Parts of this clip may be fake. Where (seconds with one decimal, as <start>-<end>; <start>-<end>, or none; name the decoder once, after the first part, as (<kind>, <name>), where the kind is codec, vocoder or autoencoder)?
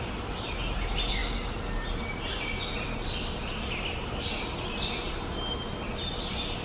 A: none